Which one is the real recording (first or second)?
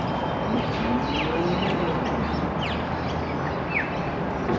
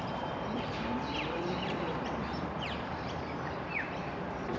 first